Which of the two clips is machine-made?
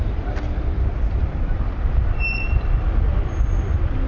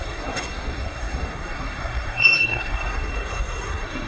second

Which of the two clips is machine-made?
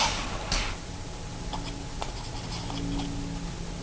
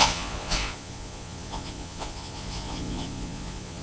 second